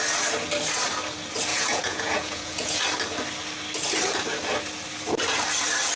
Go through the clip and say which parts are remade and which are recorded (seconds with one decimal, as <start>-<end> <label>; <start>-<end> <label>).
0.0-1.5 recorded; 1.5-2.8 remade; 2.8-6.0 recorded